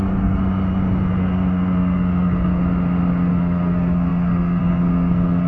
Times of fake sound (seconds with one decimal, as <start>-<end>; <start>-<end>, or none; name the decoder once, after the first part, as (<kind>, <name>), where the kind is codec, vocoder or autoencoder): 0.0-0.4 (codec, SNAC); 1.1-2.6; 3.3-5.5